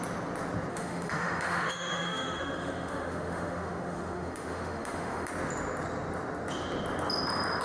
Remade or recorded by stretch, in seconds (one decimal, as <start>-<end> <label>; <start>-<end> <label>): 0.0-0.7 recorded; 0.7-5.3 remade; 5.3-7.6 recorded